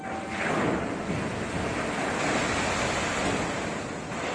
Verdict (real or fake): real